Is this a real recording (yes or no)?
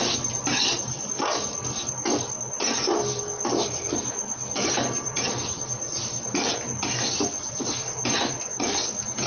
no